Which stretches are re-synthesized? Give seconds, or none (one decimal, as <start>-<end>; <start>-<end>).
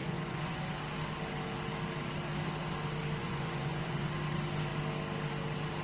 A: 0.0-0.6; 3.2-4.1